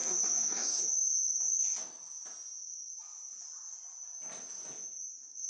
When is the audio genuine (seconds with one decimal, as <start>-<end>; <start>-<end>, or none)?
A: 1.8-5.1